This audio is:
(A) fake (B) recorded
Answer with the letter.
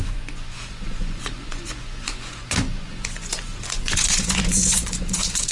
A